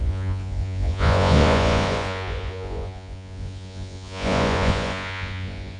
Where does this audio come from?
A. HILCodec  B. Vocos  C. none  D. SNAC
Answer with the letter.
B